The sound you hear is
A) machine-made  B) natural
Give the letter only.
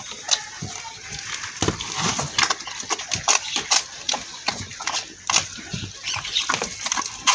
B